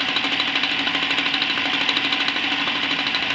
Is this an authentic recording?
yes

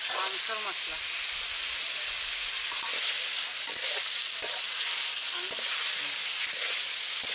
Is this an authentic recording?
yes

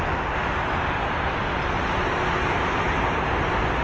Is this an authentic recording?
yes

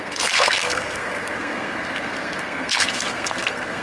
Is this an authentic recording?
no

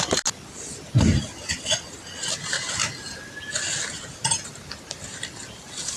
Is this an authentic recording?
yes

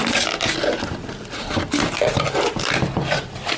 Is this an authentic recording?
yes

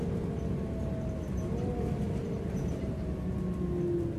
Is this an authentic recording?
yes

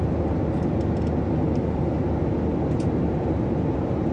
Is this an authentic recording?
yes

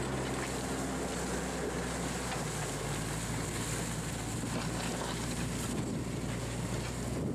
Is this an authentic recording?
yes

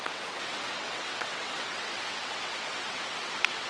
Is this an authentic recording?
no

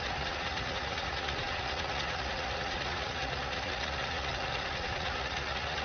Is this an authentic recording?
no